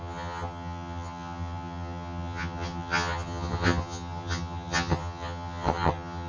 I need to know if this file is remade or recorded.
remade